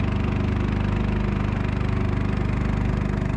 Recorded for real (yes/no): yes